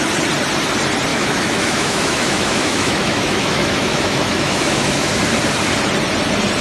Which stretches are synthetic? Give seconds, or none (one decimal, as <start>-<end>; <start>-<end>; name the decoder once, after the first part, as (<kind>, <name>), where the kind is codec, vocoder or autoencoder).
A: 1.1-5.1 (autoencoder, DAC-VAE)